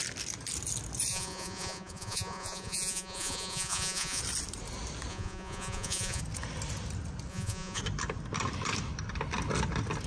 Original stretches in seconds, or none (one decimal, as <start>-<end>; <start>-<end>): 0.0-1.1; 4.2-5.1; 6.2-7.3; 7.8-10.1